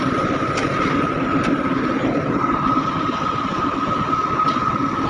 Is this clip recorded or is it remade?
recorded